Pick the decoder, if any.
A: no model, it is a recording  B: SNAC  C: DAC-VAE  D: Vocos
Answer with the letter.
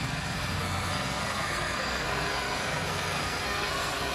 B